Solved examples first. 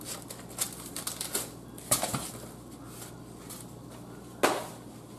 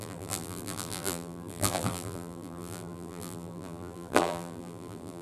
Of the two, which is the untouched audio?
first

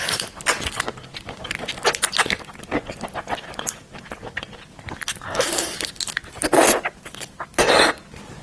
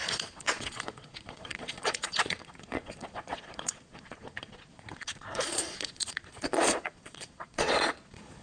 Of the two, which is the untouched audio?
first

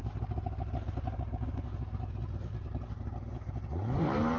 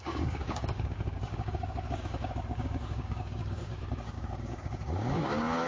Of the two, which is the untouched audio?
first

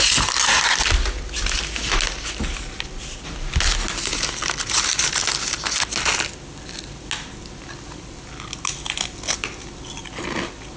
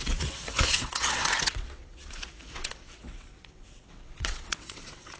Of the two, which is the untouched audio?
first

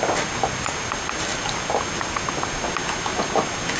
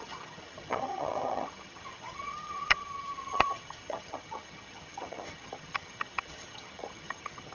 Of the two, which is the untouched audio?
first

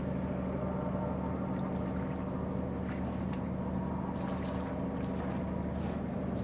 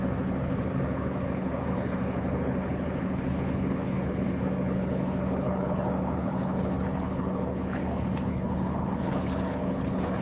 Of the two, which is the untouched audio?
first